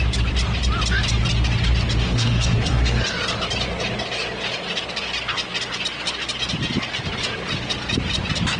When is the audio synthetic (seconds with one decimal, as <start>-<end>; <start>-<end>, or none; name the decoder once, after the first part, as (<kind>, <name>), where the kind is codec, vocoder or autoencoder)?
2.0-3.0 (codec, SNAC)

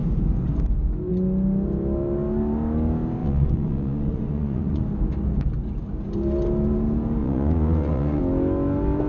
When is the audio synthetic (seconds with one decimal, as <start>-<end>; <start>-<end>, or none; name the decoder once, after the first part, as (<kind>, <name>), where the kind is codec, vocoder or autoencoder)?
3.2-4.8 (vocoder, Vocos); 7.2-8.2